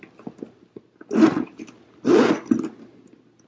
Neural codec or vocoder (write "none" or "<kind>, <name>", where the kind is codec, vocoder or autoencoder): none